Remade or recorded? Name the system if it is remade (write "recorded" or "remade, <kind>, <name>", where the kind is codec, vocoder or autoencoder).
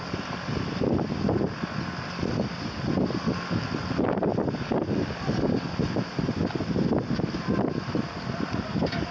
recorded